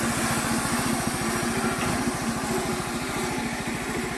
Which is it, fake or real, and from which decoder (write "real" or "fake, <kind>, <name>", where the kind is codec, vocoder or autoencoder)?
real